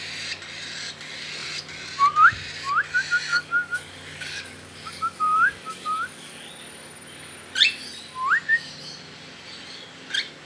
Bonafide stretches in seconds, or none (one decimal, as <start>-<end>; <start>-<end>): 0.0-3.3; 6.5-10.5